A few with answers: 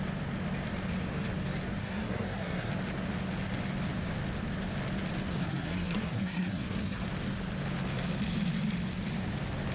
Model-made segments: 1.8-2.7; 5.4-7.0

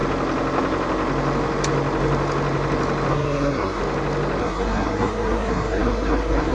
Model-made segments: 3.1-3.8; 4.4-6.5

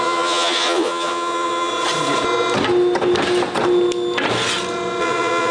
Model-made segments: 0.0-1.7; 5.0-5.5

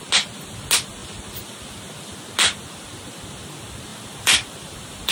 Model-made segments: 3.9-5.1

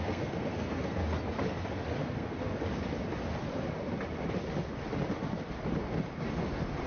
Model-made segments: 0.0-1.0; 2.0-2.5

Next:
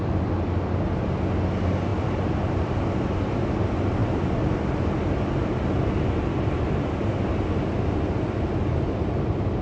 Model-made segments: none

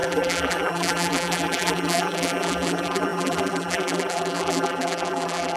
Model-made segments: 0.0-5.6

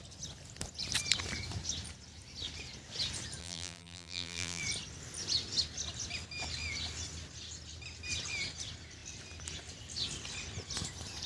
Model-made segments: 3.4-4.6